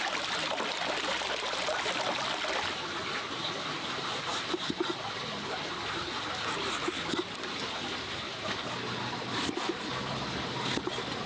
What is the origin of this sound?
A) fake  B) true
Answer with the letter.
B